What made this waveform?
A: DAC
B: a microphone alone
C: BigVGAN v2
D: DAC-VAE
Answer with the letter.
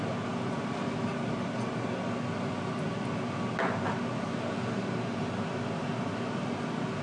B